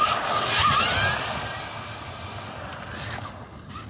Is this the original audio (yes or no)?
yes